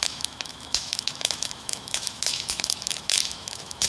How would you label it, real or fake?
fake